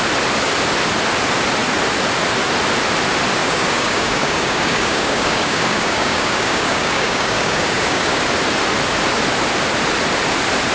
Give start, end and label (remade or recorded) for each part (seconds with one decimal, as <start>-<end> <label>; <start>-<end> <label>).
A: 0.0-3.4 recorded; 3.4-8.2 remade; 8.2-10.7 recorded